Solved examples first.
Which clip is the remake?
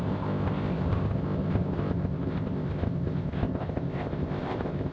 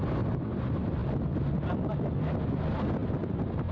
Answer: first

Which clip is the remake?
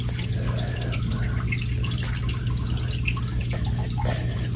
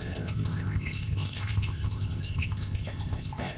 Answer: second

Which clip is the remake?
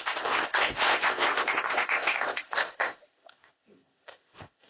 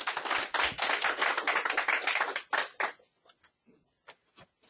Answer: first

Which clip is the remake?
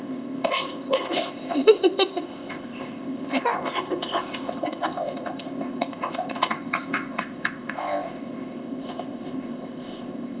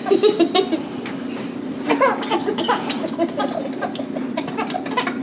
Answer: first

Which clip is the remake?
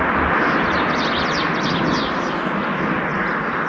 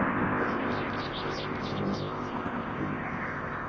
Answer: second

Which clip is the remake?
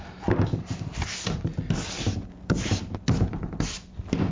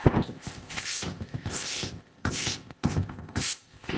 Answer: second